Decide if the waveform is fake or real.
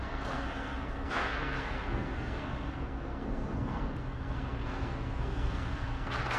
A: fake